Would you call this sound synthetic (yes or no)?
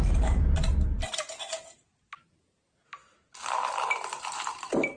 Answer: no